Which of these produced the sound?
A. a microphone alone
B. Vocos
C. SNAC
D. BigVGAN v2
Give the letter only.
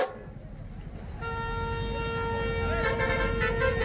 A